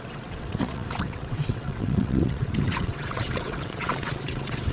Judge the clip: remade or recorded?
remade